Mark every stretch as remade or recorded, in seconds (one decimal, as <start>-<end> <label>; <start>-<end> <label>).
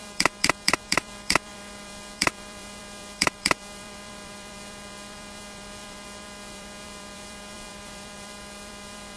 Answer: 0.0-9.2 remade